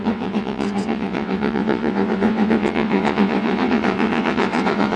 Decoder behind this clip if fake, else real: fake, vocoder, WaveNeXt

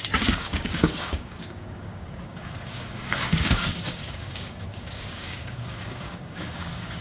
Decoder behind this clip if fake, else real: fake, codec, DAC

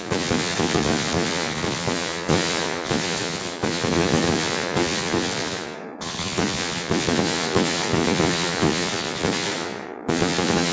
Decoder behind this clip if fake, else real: fake, vocoder, Vocos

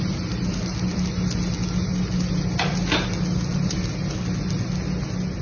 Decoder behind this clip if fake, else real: real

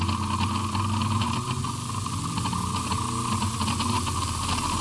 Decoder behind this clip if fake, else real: real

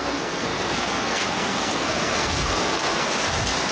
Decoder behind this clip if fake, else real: fake, codec, SNAC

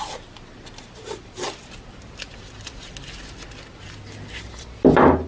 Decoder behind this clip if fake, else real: real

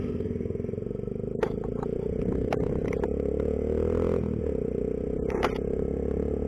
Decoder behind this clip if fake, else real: real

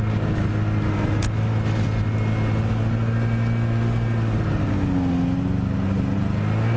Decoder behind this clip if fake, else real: real